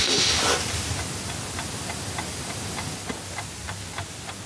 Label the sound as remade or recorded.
recorded